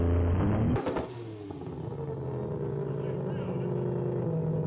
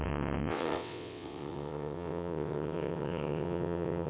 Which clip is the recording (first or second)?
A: first